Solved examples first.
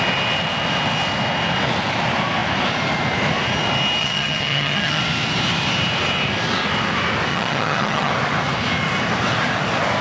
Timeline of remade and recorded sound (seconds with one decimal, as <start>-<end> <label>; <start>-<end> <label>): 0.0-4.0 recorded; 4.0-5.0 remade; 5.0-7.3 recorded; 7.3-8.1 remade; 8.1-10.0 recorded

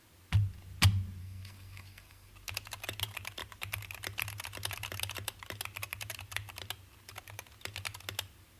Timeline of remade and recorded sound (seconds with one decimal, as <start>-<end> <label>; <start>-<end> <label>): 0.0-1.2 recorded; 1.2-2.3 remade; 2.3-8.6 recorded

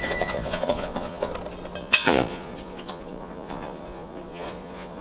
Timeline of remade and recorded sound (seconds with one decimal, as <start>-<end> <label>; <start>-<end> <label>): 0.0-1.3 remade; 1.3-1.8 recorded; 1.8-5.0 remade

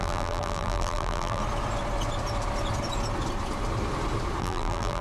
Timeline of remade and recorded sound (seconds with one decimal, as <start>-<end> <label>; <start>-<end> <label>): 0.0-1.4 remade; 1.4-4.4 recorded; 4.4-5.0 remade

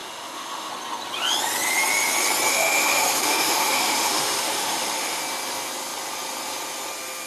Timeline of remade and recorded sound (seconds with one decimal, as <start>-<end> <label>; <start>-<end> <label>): 0.0-0.7 remade; 0.7-2.5 recorded; 2.5-5.2 remade; 5.2-7.3 recorded